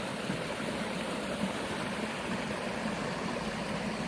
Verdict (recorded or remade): remade